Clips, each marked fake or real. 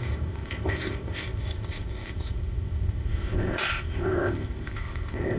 fake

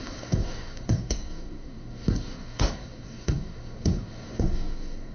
fake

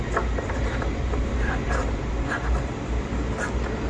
real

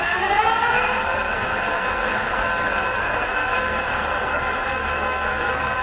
fake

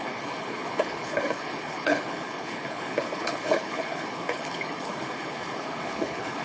fake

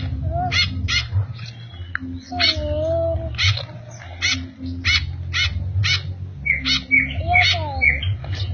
real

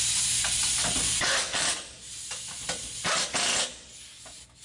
real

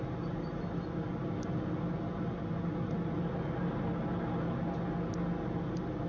real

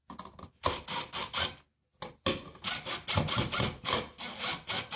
real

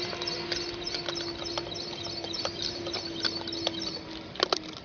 real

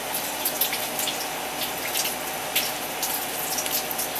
real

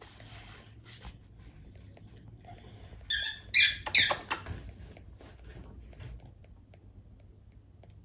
real